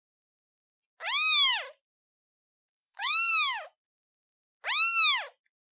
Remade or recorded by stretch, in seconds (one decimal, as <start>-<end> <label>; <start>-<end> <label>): 0.0-1.8 recorded; 1.8-3.3 remade; 3.3-5.8 recorded